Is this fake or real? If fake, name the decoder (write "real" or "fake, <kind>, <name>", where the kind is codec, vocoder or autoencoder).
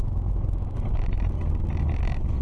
real